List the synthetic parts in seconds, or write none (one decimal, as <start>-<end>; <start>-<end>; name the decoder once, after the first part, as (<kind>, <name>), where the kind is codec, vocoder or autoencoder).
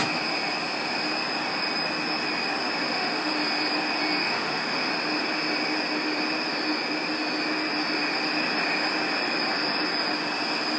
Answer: 2.8-3.3 (autoencoder, DAC-VAE); 4.2-4.9